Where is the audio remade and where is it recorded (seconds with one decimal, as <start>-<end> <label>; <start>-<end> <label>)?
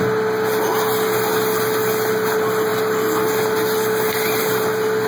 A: 0.0-5.1 recorded